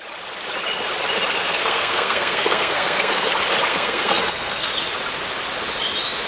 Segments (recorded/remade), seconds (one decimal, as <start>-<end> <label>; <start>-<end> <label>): 0.0-1.4 recorded; 1.4-3.3 remade; 3.3-3.7 recorded; 3.7-4.7 remade; 4.7-6.3 recorded